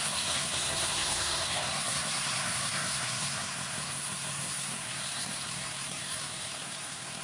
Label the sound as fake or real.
fake